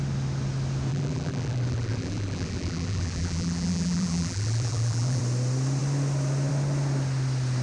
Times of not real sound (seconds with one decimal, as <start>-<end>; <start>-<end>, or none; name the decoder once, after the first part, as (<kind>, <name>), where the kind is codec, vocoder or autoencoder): 0.9-5.2 (vocoder, BigVGAN v2)